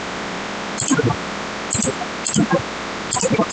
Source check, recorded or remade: recorded